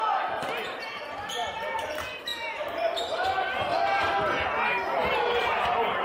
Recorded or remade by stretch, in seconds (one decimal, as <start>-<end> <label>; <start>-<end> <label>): 0.0-1.4 recorded; 1.4-1.9 remade; 1.9-2.3 recorded; 2.3-3.3 remade; 3.3-3.7 recorded; 3.7-4.2 remade; 4.2-5.0 recorded; 5.0-5.6 remade; 5.6-6.0 recorded